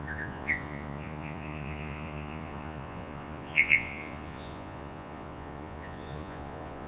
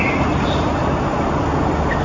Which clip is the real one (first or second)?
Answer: second